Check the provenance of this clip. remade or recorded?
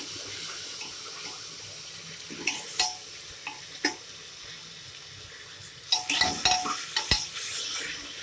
recorded